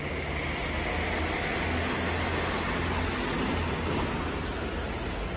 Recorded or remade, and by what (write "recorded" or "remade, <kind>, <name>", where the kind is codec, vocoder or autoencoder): recorded